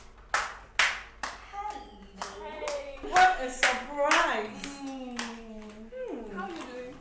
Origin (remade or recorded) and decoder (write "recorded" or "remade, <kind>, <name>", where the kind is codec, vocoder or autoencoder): recorded